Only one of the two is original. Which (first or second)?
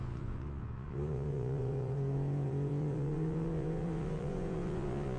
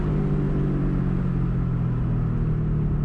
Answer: second